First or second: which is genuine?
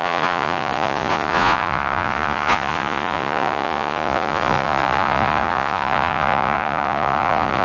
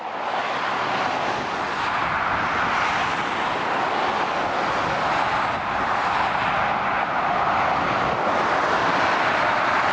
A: second